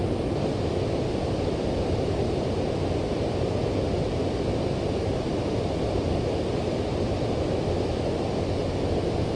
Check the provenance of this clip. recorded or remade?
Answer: recorded